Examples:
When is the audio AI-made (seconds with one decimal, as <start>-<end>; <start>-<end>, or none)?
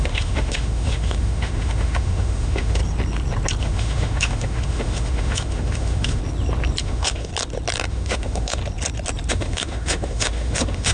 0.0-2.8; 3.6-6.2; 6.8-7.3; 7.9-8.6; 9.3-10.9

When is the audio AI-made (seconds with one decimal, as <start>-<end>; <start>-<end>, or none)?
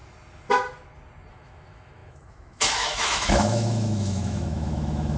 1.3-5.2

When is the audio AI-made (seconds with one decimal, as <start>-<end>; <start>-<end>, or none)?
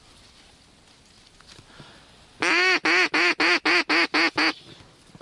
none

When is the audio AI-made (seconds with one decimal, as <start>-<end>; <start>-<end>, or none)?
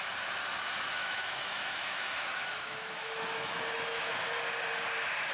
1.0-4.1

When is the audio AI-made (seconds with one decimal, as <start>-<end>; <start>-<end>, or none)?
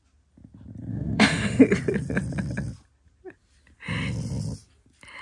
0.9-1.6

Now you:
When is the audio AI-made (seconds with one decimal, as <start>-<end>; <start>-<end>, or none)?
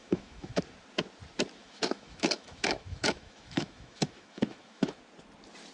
0.0-0.6; 1.6-5.0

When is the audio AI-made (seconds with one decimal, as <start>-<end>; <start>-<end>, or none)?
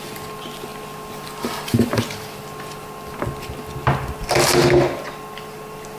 none